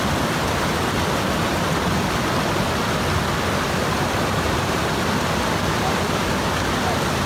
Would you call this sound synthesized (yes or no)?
no